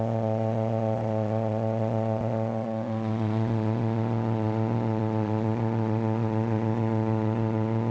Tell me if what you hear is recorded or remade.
remade